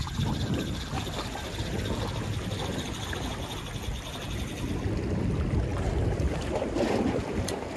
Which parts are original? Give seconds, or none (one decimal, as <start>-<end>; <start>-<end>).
0.0-7.8

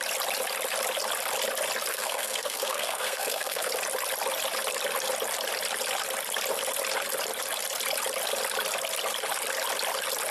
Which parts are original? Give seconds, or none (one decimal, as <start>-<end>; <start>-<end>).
0.0-1.9; 3.7-10.3

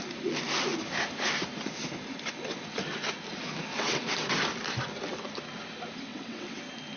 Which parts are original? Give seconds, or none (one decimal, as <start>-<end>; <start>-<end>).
0.0-3.7; 4.3-6.1; 6.6-7.0

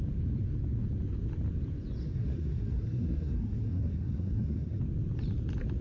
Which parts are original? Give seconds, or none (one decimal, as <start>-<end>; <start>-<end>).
0.0-2.0; 4.8-5.8

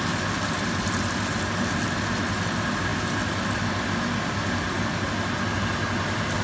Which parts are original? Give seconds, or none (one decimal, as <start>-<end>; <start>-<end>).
0.0-6.4

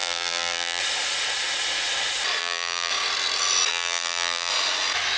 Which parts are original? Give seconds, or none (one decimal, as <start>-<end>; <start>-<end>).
0.8-2.4; 2.9-3.7; 4.5-5.2

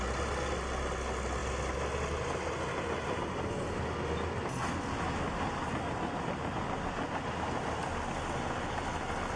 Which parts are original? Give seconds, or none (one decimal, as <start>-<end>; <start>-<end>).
0.0-9.4